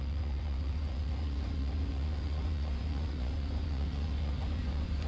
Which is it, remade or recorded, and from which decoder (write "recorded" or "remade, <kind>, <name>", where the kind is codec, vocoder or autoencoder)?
remade, vocoder, Vocos